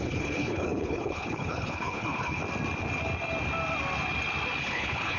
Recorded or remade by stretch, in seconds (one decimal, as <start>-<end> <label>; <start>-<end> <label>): 0.0-2.4 remade; 2.4-4.6 recorded; 4.6-5.2 remade